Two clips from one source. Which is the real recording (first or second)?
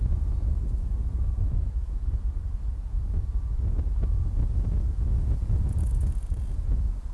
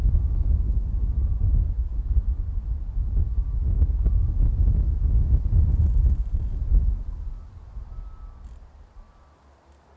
second